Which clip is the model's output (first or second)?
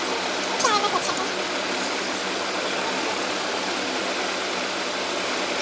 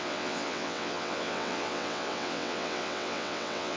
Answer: second